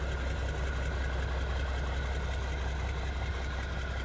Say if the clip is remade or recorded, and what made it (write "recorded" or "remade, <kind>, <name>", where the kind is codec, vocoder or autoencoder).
recorded